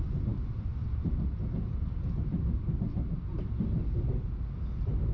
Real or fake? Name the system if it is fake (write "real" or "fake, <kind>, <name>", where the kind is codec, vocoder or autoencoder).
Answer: real